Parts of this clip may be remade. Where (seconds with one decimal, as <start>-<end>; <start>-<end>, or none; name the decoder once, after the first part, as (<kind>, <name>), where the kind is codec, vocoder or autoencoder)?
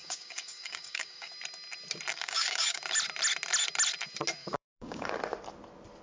0.0-1.3 (codec, DAC); 2.1-2.8; 4.4-5.1